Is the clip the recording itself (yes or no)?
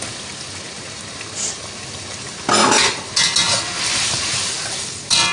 yes